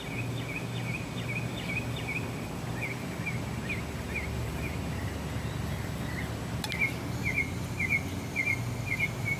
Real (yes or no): yes